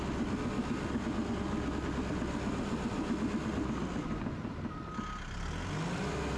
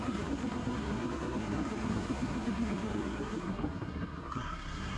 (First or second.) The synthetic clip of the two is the second